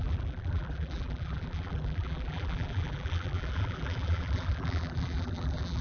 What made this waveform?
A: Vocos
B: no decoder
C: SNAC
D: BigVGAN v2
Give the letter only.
D